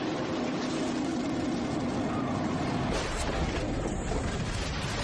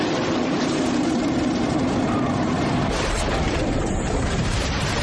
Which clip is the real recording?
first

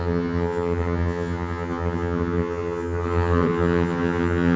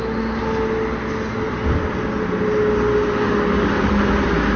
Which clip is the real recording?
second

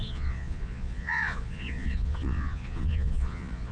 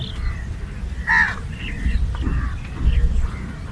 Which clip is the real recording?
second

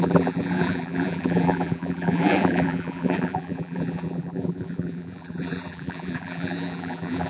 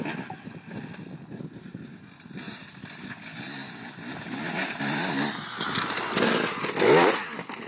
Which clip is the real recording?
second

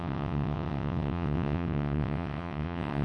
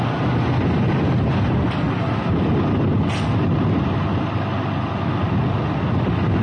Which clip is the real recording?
second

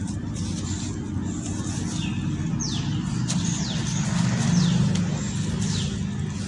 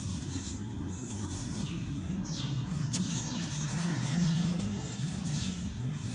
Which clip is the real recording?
first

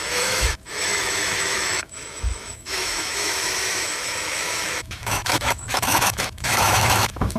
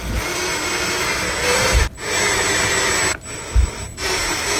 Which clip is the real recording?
second